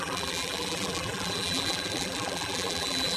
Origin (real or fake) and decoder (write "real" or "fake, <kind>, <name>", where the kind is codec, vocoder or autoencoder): fake, vocoder, BigVGAN v2